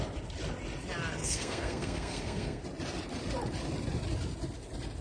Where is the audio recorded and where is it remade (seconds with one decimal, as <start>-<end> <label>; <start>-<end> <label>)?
0.0-1.2 recorded; 1.2-2.6 remade; 2.6-5.0 recorded